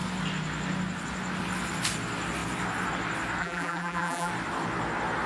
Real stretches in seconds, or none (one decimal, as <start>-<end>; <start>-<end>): 0.0-3.4; 4.3-5.3